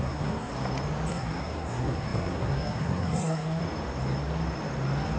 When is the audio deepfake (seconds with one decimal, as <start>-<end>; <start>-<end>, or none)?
0.0-0.5; 1.1-3.6